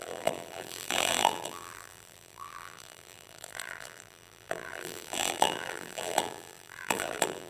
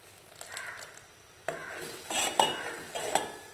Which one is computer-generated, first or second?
first